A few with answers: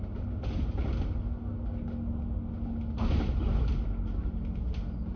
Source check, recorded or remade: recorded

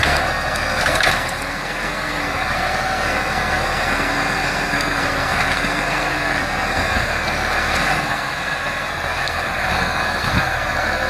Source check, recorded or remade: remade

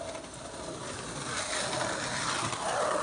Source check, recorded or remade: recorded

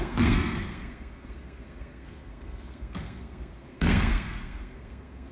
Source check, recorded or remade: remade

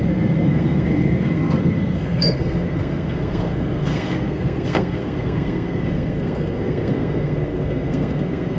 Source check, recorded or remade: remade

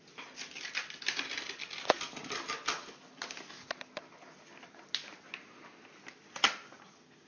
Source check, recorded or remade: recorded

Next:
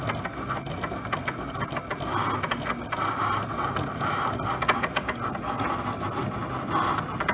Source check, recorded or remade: recorded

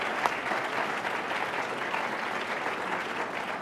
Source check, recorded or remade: recorded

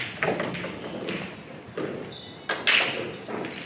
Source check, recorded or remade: recorded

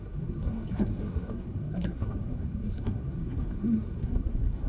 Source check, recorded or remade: remade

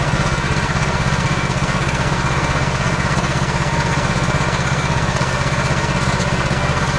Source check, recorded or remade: remade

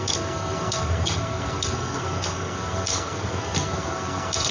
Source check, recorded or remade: remade